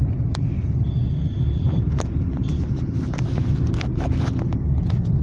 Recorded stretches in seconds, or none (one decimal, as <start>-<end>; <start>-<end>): 0.0-1.3; 3.8-5.2